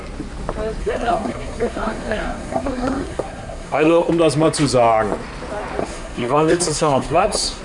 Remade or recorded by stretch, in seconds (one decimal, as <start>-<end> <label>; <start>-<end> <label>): 0.0-0.8 recorded; 0.8-4.1 remade; 4.1-5.8 recorded; 5.8-7.6 remade